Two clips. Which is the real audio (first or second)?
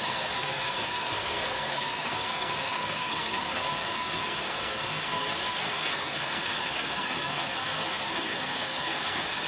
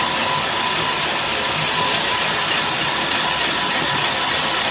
second